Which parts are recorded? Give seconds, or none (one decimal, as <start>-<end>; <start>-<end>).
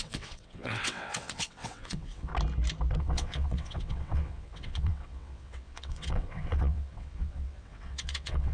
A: 2.3-3.0